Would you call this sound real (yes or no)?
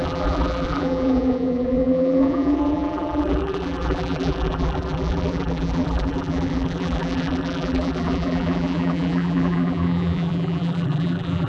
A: no